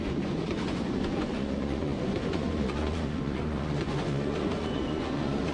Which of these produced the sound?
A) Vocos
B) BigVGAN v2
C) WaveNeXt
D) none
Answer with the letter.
A